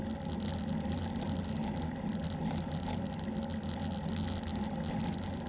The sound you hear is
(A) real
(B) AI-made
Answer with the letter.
A